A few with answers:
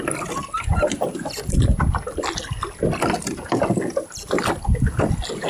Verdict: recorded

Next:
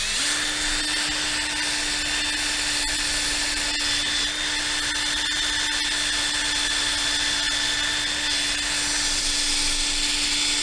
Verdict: recorded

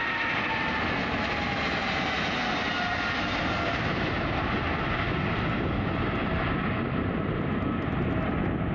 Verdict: recorded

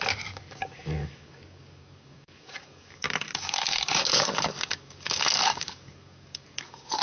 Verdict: remade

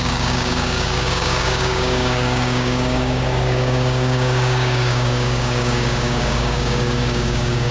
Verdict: remade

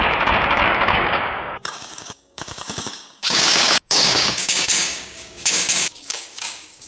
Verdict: remade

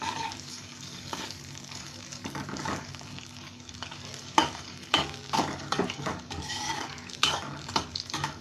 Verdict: remade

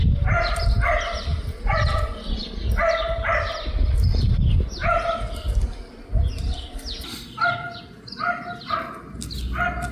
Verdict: recorded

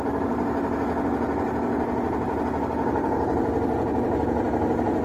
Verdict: recorded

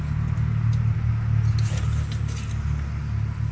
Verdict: recorded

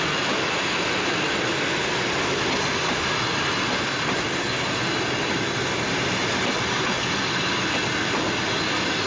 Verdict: recorded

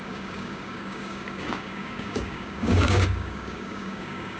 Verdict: remade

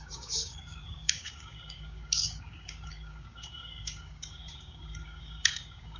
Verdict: remade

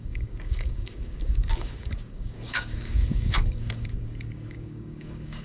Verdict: remade